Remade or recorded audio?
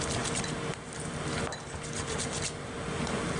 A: recorded